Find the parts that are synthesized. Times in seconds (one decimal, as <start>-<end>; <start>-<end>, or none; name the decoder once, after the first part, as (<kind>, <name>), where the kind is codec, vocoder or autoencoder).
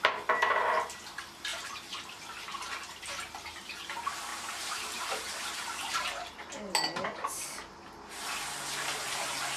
1.5-2.0 (vocoder, BigVGAN v2); 4.3-5.9